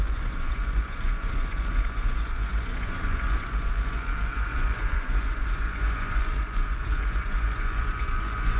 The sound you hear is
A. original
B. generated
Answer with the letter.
B